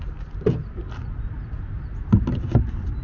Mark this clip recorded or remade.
recorded